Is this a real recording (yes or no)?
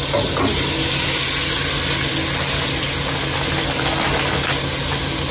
yes